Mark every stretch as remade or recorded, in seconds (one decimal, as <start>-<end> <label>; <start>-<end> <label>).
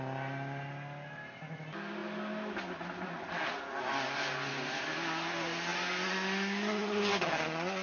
0.0-7.8 recorded